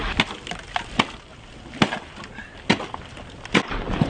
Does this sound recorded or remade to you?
recorded